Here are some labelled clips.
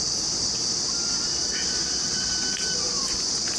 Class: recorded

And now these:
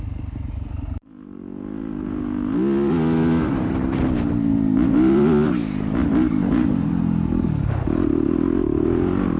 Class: recorded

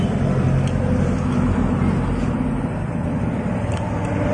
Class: recorded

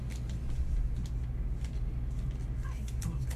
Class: recorded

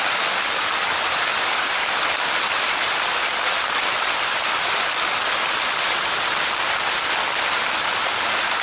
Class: recorded